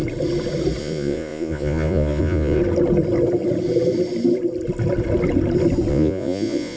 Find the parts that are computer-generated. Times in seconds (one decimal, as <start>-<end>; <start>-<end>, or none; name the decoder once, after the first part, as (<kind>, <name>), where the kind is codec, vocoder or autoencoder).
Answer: 0.8-2.6 (vocoder, Vocos); 5.9-6.8